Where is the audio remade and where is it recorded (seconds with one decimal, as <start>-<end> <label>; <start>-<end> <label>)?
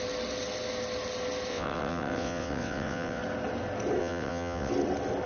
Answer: 0.0-1.5 recorded; 1.5-3.2 remade; 3.2-4.0 recorded; 4.0-4.7 remade; 4.7-5.3 recorded